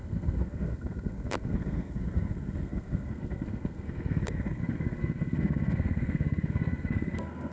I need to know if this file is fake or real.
fake